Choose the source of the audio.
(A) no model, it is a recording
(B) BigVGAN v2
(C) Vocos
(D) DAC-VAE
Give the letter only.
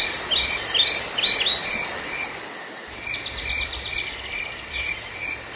A